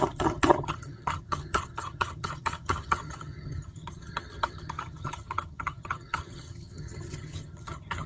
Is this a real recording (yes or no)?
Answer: no